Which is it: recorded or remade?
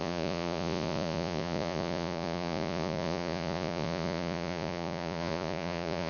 remade